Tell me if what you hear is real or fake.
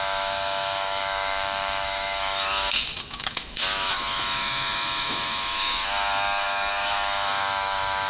fake